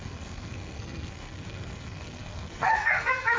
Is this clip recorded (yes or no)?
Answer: no